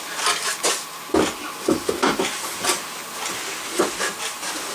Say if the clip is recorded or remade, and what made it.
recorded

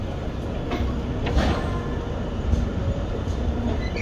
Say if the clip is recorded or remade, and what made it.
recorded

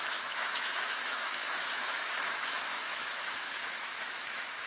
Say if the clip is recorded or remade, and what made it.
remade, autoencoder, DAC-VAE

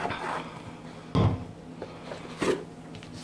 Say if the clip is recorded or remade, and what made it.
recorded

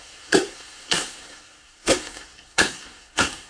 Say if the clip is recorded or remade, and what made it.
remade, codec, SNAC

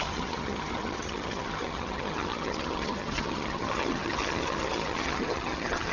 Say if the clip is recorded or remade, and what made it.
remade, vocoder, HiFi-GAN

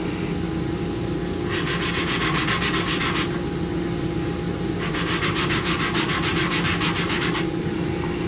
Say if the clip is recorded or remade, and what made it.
recorded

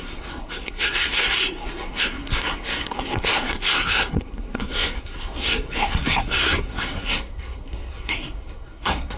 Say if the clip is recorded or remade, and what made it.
remade, codec, SNAC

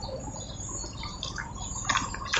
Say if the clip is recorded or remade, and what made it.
remade, vocoder, BigVGAN v2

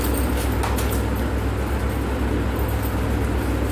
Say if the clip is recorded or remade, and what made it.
recorded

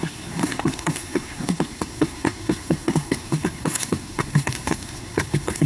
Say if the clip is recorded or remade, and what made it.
remade, codec, SNAC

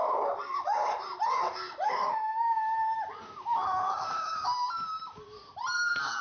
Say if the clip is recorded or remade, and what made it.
recorded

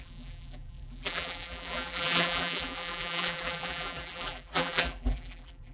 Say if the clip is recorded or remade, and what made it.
remade, vocoder, BigVGAN v2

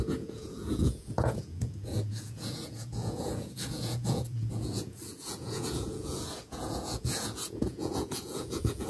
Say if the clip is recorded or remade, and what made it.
remade, vocoder, Vocos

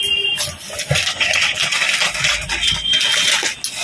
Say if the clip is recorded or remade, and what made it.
recorded